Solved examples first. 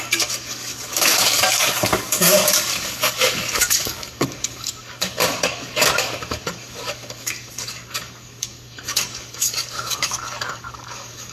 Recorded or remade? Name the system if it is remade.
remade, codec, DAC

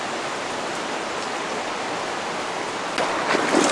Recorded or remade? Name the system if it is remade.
recorded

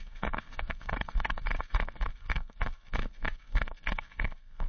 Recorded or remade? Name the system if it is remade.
remade, codec, SNAC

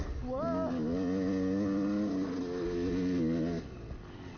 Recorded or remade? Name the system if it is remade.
recorded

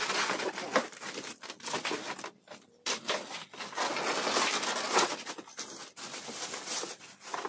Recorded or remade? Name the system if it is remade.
recorded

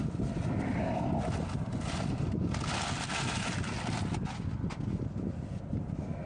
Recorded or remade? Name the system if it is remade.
recorded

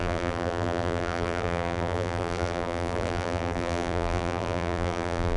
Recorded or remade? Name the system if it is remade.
remade, vocoder, BigVGAN v2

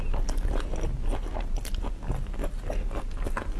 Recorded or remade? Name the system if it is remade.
recorded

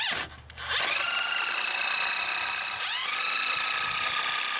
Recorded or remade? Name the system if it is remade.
recorded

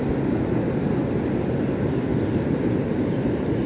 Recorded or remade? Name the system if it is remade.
recorded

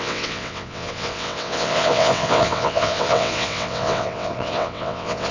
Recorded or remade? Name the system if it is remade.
remade, vocoder, WaveNeXt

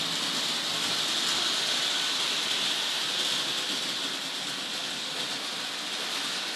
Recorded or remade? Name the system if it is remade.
recorded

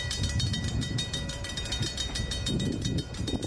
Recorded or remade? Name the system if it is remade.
remade, vocoder, BigVGAN v2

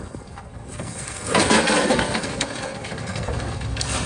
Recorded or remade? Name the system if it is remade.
remade, codec, SNAC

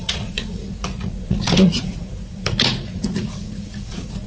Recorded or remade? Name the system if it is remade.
remade, vocoder, Vocos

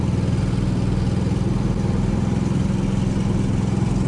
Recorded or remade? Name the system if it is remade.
recorded